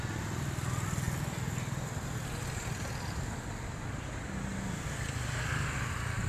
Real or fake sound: real